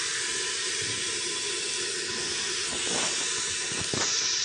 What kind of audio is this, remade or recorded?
recorded